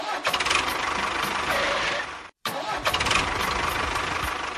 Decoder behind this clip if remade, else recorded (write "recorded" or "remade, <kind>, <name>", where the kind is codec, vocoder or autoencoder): remade, vocoder, BigVGAN v2